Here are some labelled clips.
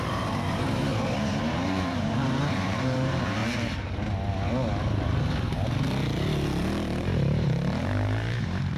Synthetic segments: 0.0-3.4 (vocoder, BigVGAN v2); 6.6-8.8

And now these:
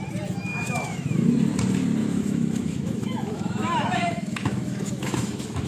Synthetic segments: 0.5-1.3 (autoencoder, DAC-VAE); 2.0-5.7

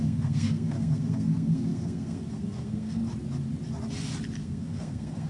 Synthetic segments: 0.0-3.0 (codec, SNAC); 4.4-5.3

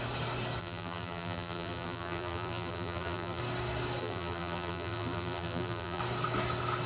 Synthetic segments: 0.6-3.4 (vocoder, BigVGAN v2); 4.0-6.0

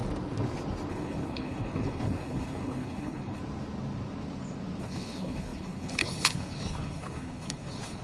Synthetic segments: 0.9-3.4 (codec, HILCodec); 4.8-8.0

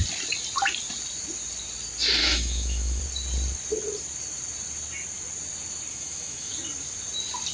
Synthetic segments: 2.2-3.0 (autoencoder, DAC-VAE); 5.9-6.5

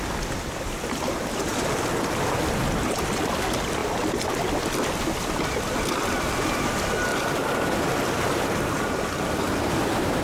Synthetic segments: 1.5-2.3 (vocoder, BigVGAN v2); 7.1-7.8